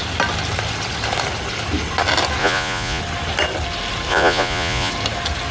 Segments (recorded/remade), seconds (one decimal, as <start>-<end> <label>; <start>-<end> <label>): 0.0-2.4 recorded; 2.4-3.0 remade; 3.0-4.1 recorded; 4.1-4.9 remade; 4.9-5.5 recorded

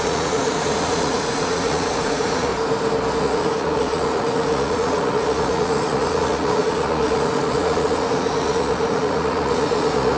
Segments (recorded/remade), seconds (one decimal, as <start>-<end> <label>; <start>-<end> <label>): 0.0-2.5 remade; 2.5-3.2 recorded; 3.2-10.2 remade

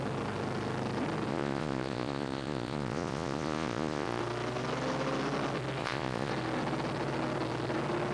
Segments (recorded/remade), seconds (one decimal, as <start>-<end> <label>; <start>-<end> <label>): 0.0-1.3 recorded; 1.3-4.2 remade; 4.2-5.8 recorded; 5.8-6.3 remade; 6.3-8.1 recorded

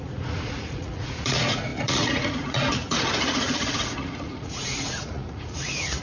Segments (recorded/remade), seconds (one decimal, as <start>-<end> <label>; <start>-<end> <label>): 0.0-6.0 remade

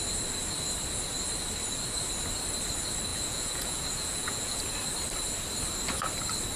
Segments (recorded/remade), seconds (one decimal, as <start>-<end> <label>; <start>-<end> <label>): 0.0-3.1 recorded; 3.1-4.6 remade; 4.6-6.6 recorded

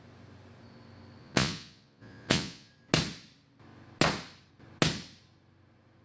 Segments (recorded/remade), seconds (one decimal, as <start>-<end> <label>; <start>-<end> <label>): 0.0-1.2 recorded; 1.2-2.7 remade; 2.7-6.0 recorded

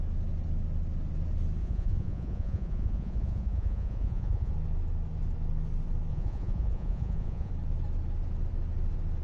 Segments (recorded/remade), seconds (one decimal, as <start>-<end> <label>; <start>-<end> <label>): 0.0-1.6 recorded; 1.6-4.5 remade; 4.5-6.1 recorded; 6.1-7.5 remade; 7.5-9.2 recorded